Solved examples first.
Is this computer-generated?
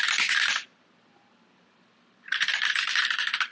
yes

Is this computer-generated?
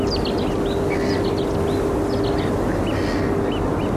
no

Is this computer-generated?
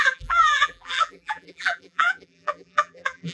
yes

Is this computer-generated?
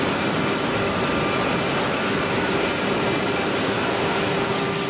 no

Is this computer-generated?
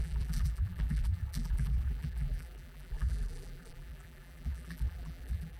yes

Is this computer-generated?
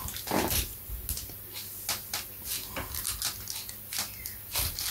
no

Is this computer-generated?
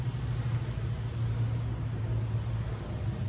no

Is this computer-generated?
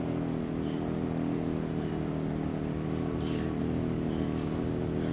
no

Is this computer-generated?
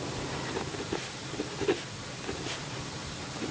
no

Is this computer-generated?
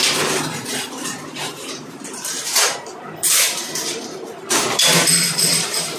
yes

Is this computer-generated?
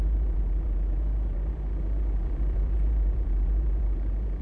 yes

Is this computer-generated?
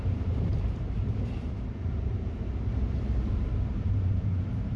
yes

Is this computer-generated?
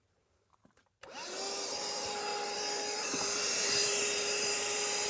yes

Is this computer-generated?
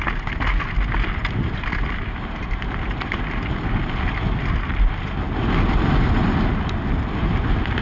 no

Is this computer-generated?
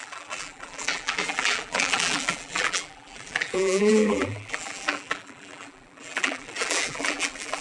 yes